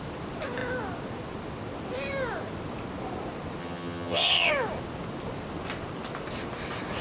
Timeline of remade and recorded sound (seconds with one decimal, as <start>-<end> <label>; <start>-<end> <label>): 0.0-3.6 recorded; 3.6-4.5 remade; 4.5-7.0 recorded